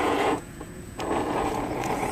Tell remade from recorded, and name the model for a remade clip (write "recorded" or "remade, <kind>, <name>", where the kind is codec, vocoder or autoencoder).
remade, vocoder, Vocos